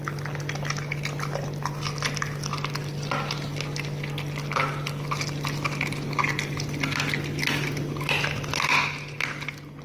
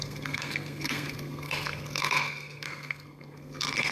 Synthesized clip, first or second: second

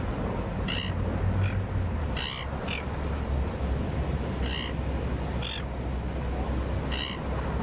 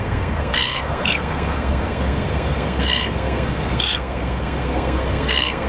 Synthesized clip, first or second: second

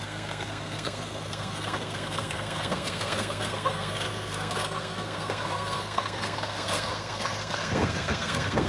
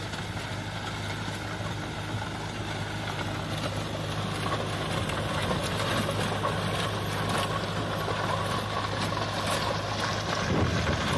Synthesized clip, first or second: first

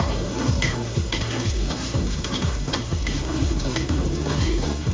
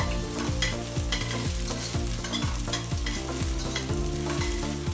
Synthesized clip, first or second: first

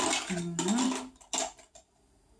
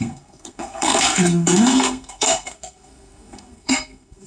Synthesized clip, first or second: second